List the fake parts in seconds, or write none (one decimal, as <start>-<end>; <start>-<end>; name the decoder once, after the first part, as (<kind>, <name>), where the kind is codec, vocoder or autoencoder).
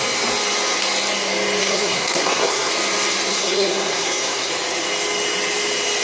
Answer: 1.6-2.7 (codec, SNAC); 3.3-4.5